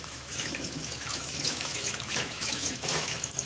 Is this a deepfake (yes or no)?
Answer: yes